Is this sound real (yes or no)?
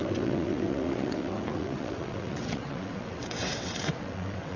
no